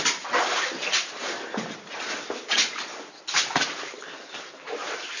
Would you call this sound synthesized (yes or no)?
no